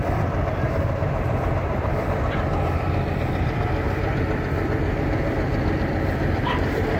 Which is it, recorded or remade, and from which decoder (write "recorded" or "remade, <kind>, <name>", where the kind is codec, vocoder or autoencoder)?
recorded